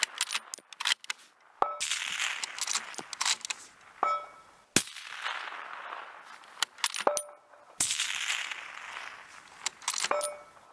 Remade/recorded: recorded